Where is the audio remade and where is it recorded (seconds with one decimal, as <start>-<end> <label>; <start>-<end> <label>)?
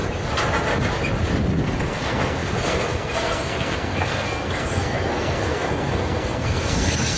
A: 0.0-1.6 recorded; 1.6-7.2 remade